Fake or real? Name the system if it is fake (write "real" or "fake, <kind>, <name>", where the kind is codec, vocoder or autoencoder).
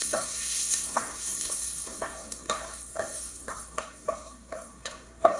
fake, codec, SNAC